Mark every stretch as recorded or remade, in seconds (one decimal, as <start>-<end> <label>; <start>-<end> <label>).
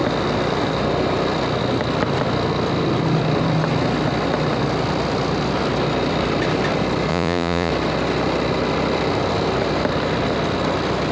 0.0-7.1 recorded; 7.1-7.7 remade; 7.7-11.1 recorded